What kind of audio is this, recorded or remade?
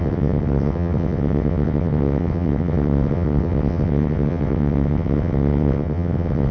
remade